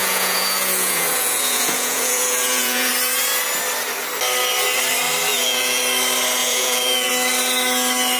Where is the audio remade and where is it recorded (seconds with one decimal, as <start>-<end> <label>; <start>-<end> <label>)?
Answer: 0.0-2.9 remade; 2.9-5.3 recorded; 5.3-5.8 remade; 5.8-6.4 recorded; 6.4-7.1 remade; 7.1-8.2 recorded